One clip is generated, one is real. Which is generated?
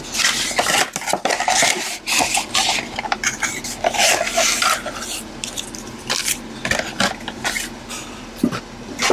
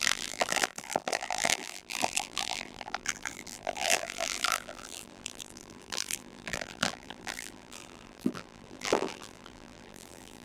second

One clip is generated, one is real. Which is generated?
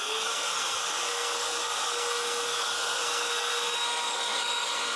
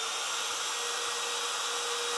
first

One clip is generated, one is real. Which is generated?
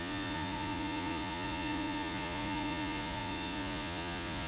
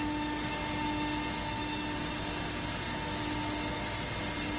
first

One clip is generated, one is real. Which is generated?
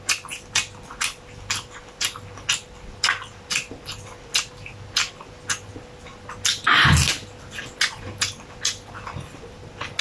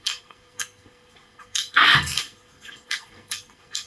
second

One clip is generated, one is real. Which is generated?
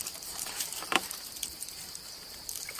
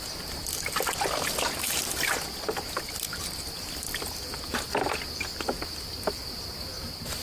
first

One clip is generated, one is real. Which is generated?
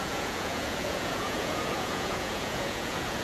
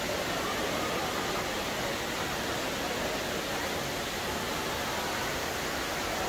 first